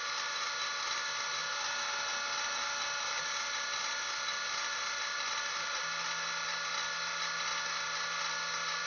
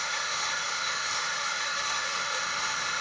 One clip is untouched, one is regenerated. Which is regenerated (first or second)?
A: second